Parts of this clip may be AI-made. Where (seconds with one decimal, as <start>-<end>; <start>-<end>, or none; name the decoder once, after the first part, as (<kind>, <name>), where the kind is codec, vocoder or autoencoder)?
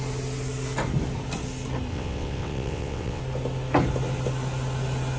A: 1.9-3.2 (vocoder, WaveNeXt)